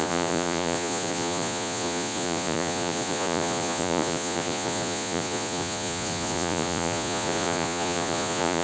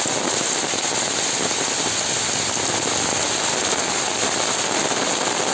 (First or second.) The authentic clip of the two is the second